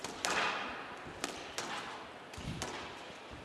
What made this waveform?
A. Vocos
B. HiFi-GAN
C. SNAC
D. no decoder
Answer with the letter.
D